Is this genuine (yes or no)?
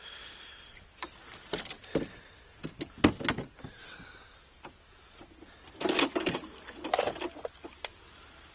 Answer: yes